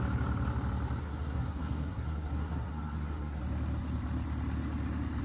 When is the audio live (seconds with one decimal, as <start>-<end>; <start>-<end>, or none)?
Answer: 0.0-1.0; 3.4-5.2